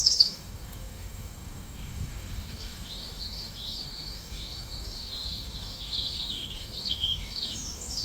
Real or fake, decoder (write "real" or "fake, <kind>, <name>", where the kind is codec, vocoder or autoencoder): fake, codec, DAC